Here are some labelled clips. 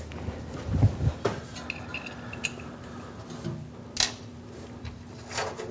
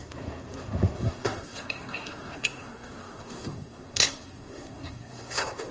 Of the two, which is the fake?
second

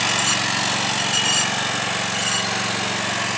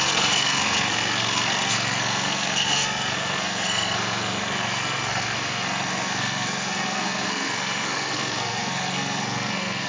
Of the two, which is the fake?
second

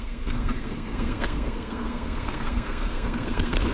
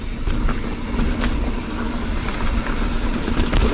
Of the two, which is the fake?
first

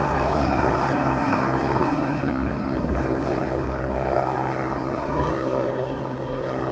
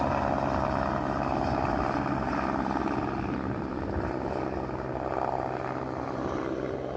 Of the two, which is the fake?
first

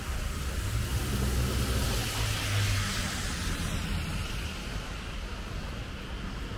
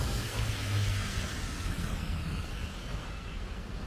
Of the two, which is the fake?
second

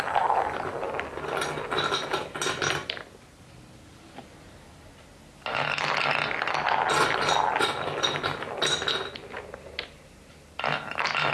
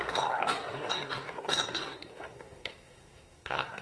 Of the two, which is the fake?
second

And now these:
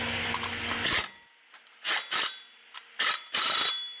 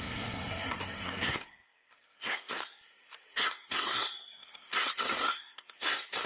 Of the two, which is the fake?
second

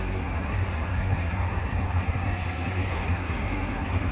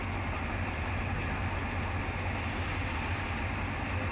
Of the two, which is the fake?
first